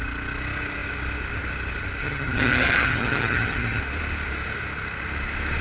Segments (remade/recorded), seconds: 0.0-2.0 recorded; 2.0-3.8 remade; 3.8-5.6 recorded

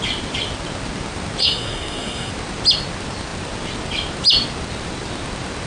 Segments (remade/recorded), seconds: 0.0-1.4 recorded; 1.4-2.3 remade; 2.3-5.7 recorded

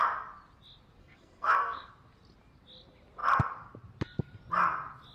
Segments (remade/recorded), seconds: 0.0-1.0 recorded; 1.0-1.9 remade; 1.9-5.1 recorded

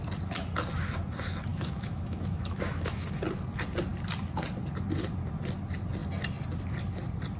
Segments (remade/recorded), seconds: 0.0-1.5 recorded; 1.5-3.0 remade; 3.0-7.4 recorded